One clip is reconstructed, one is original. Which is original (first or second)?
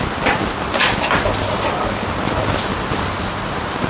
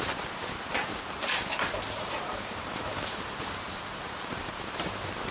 first